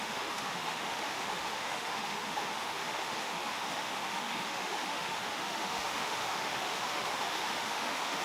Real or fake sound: fake